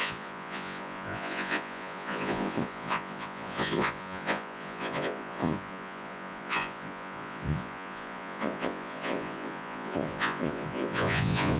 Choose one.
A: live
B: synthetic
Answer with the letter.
B